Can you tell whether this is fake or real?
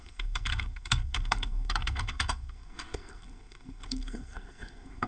fake